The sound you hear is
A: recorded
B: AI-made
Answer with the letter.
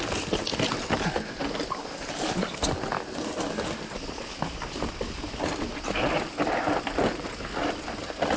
A